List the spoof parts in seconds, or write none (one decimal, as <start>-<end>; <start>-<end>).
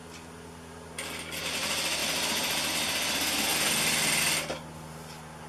none